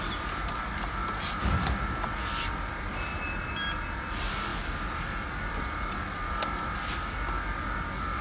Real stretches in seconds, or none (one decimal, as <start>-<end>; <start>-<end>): 0.0-1.0; 1.6-8.2